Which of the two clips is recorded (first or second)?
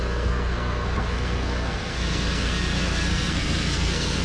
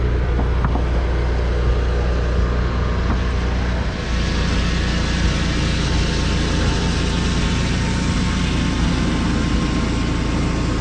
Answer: second